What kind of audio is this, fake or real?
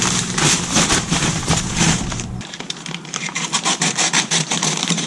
fake